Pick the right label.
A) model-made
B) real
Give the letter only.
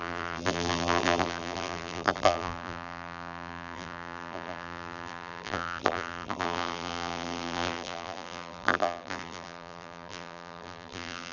A